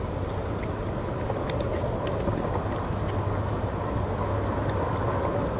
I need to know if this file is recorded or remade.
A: recorded